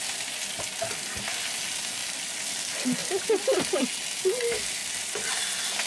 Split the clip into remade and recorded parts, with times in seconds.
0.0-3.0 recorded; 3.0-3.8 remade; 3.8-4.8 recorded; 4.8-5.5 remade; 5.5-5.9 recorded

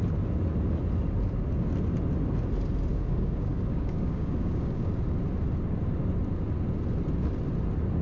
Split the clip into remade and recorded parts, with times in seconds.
0.0-2.9 recorded; 2.9-4.9 remade; 4.9-8.0 recorded

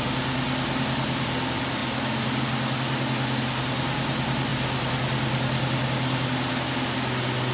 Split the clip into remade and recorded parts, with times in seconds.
0.0-7.5 recorded

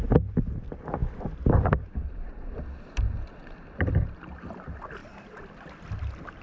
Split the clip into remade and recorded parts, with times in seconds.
0.0-1.0 recorded; 1.0-3.5 remade; 3.5-5.0 recorded; 5.0-5.7 remade; 5.7-6.4 recorded

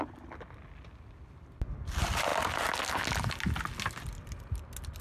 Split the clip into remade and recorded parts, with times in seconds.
0.0-5.0 recorded

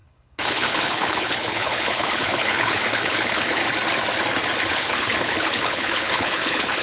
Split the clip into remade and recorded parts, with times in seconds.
0.0-3.6 remade; 3.6-4.7 recorded; 4.7-6.8 remade